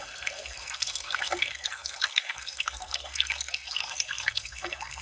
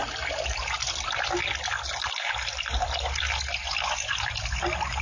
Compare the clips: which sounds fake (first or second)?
first